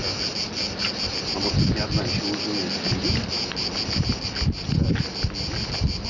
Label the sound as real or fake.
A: real